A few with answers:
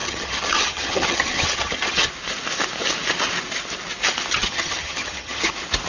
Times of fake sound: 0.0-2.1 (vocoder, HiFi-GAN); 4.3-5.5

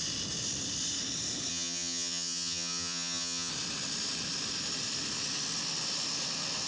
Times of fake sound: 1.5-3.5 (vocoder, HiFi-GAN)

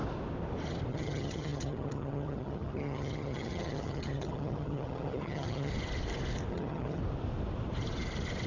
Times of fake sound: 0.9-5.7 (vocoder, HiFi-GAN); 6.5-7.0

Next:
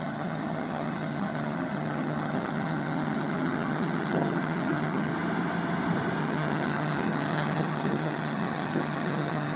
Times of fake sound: 0.0-5.1 (vocoder, HiFi-GAN); 6.2-9.6

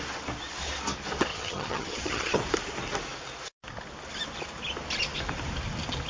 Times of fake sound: 1.3-2.4 (vocoder, HiFi-GAN)

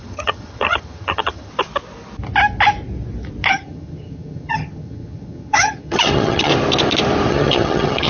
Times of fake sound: 0.0-1.5 (vocoder, HiFi-GAN); 3.5-6.5; 7.3-8.1